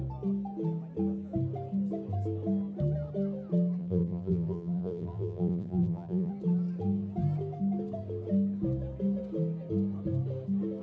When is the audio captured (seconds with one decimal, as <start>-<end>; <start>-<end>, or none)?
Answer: 0.0-3.8; 6.3-10.8

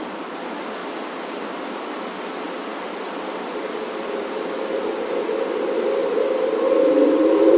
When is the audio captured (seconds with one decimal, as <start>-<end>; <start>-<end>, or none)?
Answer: 0.0-2.7; 4.1-6.0

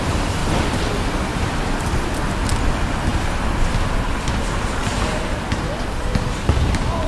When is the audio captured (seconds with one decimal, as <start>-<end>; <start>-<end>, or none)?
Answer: 0.0-0.4; 0.9-1.3; 2.2-3.1; 6.3-7.1